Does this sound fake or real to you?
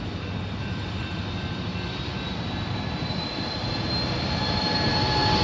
real